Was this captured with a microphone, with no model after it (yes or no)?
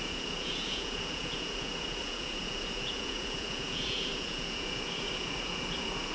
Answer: no